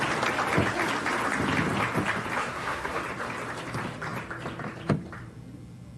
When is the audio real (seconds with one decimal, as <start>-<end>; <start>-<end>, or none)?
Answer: 0.0-2.4; 3.0-6.0